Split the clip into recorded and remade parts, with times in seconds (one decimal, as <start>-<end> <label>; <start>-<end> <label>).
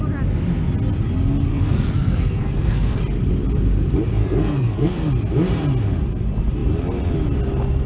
0.0-1.5 recorded; 1.5-3.0 remade; 3.0-4.2 recorded; 4.2-5.1 remade; 5.1-7.9 recorded